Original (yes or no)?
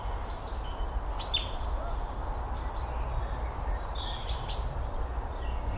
yes